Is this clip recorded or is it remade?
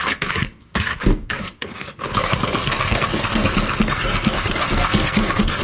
remade